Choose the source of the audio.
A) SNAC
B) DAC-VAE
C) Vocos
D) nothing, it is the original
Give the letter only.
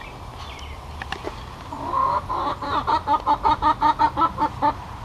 D